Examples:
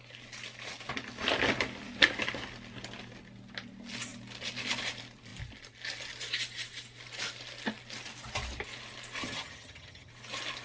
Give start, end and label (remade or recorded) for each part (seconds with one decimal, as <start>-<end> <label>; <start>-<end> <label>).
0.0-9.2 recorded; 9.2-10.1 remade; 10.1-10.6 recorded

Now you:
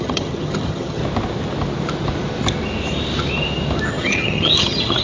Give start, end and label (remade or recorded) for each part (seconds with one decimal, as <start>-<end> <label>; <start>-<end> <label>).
0.0-1.0 remade; 1.0-3.9 recorded; 3.9-5.0 remade

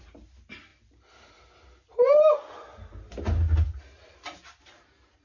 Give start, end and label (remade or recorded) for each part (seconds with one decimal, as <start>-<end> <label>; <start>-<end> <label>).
0.0-5.2 recorded

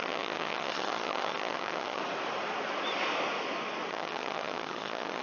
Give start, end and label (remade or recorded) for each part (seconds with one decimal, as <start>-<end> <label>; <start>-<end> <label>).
0.0-2.0 remade; 2.0-3.9 recorded; 3.9-5.2 remade